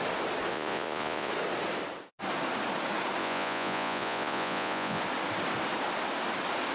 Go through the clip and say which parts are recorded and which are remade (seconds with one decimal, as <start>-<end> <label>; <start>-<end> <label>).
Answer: 0.0-0.5 recorded; 0.5-1.3 remade; 1.3-3.2 recorded; 3.2-5.0 remade; 5.0-6.7 recorded